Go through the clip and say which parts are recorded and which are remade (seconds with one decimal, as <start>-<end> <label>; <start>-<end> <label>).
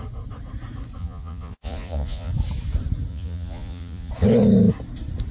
0.0-1.0 recorded; 1.0-2.3 remade; 2.3-3.1 recorded; 3.1-4.1 remade; 4.1-5.3 recorded